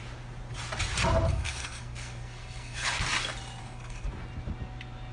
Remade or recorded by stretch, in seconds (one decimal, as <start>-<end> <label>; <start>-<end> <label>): 0.0-1.3 recorded; 1.3-3.0 remade; 3.0-3.6 recorded; 3.6-4.1 remade; 4.1-5.1 recorded